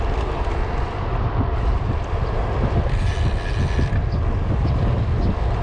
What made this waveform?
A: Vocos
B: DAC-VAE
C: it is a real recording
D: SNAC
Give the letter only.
C